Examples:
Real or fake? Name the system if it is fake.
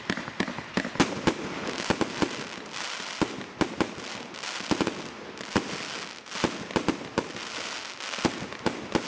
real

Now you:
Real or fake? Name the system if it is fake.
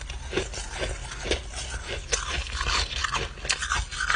real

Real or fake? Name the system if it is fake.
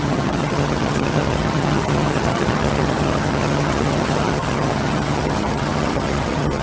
fake, vocoder, HiFi-GAN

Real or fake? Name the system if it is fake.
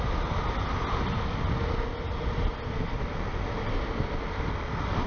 real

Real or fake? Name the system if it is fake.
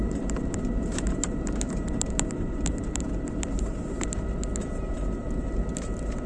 fake, vocoder, BigVGAN v2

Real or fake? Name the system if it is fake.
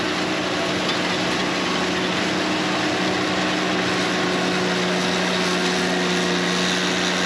real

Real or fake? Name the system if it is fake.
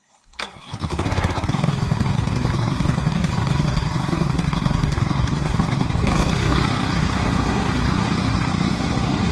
fake, codec, SNAC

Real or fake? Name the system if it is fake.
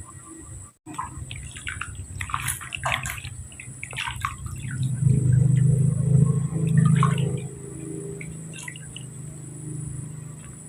real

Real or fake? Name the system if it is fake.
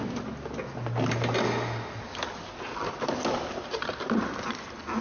real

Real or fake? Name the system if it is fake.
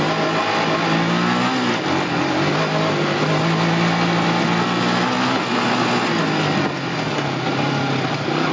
real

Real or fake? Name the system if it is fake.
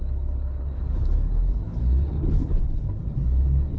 fake, codec, HILCodec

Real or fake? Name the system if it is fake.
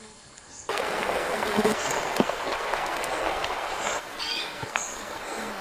fake, codec, SNAC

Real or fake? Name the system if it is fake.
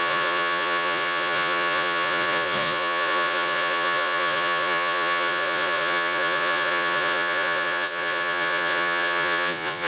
fake, vocoder, Vocos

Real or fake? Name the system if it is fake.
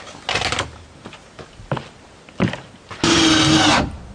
real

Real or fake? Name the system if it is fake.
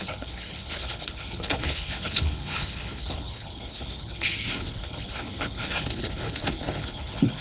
fake, codec, HILCodec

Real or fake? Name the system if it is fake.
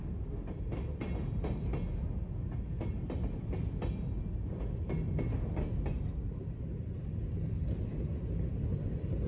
real